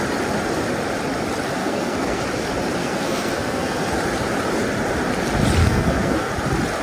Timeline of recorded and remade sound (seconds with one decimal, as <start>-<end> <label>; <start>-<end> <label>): 0.0-1.6 recorded; 1.6-2.2 remade; 2.2-2.8 recorded; 2.8-3.9 remade; 3.9-5.6 recorded; 5.6-6.3 remade; 6.3-6.8 recorded